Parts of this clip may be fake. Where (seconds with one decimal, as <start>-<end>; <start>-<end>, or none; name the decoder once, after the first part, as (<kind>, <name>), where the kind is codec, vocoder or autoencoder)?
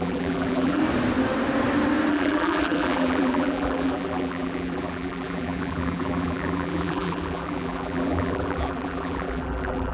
0.0-0.8 (vocoder, BigVGAN v2); 2.1-9.9